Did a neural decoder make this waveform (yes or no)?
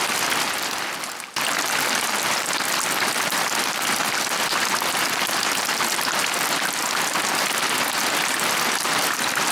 no